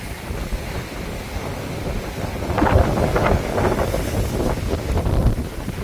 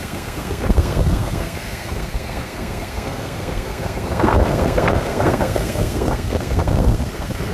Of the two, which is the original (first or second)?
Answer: first